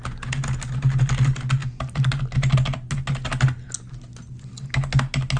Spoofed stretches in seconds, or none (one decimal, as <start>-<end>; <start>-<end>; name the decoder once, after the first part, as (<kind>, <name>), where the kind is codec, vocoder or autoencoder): none